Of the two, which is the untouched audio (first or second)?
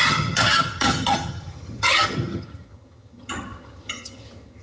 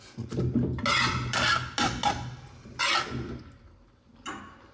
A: second